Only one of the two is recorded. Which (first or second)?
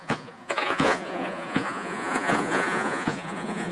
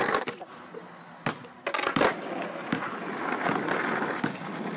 second